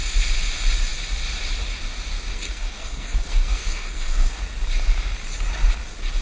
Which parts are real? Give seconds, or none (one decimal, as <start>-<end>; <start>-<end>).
0.0-2.3; 4.4-6.2